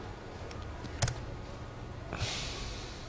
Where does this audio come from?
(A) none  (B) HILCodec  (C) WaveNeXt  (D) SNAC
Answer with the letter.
A